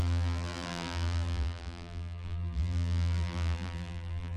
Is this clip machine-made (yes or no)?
yes